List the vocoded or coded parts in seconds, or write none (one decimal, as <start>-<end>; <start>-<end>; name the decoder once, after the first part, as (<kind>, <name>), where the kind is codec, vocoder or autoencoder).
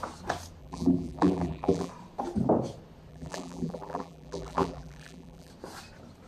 0.6-1.9 (vocoder, BigVGAN v2); 3.1-5.5